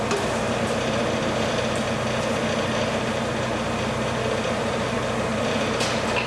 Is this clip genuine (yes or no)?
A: yes